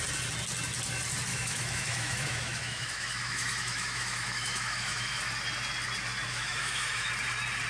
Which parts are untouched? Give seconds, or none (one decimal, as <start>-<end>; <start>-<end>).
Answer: 0.0-1.3; 5.2-6.3; 7.1-7.7